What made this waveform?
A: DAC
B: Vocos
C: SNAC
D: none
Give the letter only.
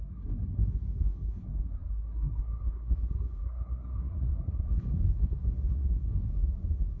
C